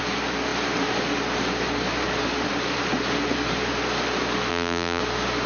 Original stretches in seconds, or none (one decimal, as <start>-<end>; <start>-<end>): 0.0-4.5; 5.0-5.5